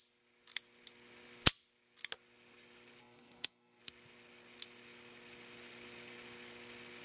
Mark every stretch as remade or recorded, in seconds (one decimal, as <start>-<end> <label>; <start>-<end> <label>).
0.0-3.0 recorded; 3.0-3.8 remade; 3.8-7.0 recorded